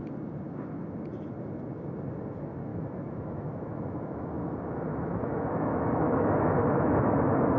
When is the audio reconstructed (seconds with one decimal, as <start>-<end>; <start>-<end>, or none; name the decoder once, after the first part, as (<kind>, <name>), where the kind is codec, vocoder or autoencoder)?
2.7-4.3 (autoencoder, DAC-VAE); 4.9-7.6